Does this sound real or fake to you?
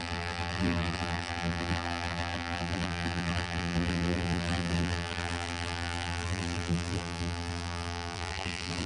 fake